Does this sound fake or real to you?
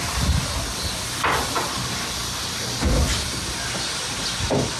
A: real